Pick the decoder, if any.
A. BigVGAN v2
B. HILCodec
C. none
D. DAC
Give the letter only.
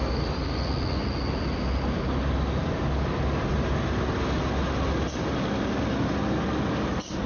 C